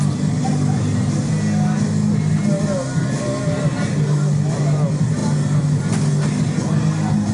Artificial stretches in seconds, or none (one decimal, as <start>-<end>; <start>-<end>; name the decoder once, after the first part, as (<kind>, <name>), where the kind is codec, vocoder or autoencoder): none